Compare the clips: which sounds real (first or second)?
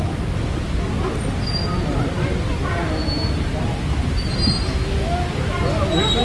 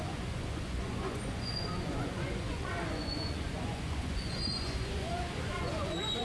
first